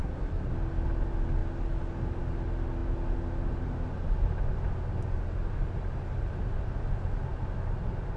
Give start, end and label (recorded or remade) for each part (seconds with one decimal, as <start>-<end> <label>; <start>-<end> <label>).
0.0-0.5 remade; 0.5-8.2 recorded